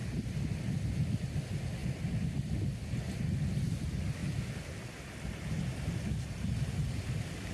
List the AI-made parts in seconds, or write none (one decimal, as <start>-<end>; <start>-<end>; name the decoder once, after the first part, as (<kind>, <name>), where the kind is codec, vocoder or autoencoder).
none